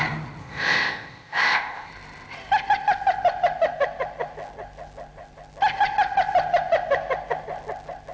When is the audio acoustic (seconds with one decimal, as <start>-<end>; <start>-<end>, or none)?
0.0-0.4; 1.9-8.1